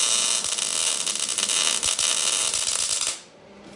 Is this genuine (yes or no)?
yes